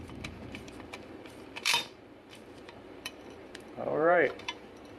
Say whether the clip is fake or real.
fake